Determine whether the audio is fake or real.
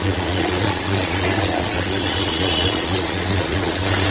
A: fake